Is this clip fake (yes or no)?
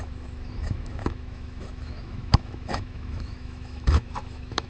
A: yes